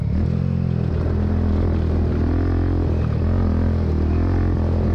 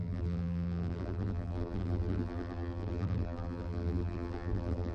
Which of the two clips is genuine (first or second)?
first